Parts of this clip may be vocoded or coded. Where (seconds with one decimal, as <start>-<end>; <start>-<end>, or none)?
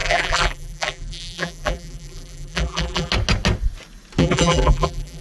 0.0-3.1; 4.2-5.2